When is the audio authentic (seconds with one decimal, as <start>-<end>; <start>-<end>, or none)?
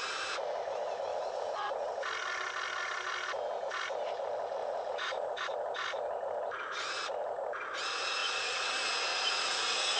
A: 0.0-1.1; 1.9-4.6; 5.3-8.2; 8.7-9.1